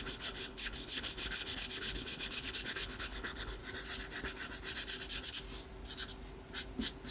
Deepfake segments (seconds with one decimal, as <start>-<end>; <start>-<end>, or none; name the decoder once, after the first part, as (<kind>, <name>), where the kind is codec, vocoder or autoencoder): 0.0-3.6 (codec, HILCodec)